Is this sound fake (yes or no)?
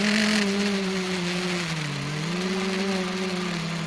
no